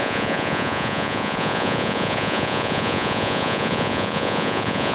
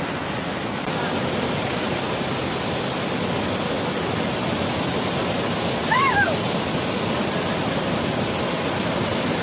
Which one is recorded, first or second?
second